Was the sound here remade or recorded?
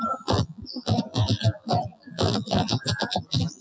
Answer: remade